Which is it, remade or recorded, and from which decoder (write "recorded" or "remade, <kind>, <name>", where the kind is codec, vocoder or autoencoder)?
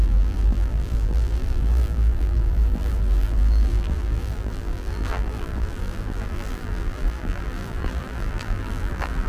remade, vocoder, BigVGAN v2